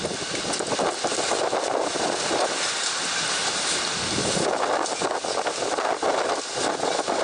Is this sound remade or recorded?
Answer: recorded